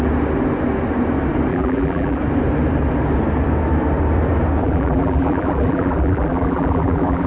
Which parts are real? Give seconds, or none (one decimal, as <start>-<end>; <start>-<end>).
0.0-1.5; 2.2-4.6